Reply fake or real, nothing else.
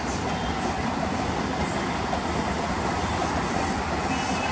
real